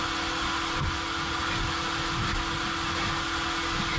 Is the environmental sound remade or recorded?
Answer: recorded